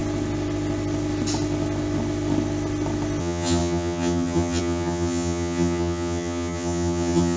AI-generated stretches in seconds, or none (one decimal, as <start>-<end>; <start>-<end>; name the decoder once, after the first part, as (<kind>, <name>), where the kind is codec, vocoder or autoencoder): 3.2-7.4 (vocoder, HiFi-GAN)